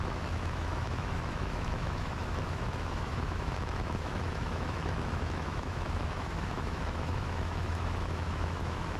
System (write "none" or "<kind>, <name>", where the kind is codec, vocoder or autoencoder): autoencoder, DAC-VAE